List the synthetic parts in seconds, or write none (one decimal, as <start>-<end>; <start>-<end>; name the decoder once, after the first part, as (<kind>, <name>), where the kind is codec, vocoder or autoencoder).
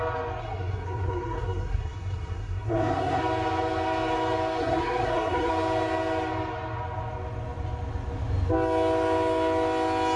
0.4-3.2 (codec, SNAC); 4.6-5.5